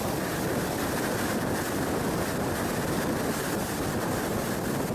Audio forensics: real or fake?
real